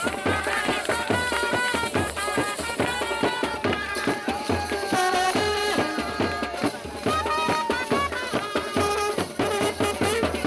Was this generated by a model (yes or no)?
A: yes